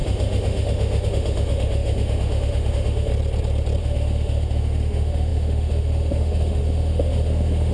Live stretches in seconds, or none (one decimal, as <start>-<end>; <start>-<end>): 3.1-3.8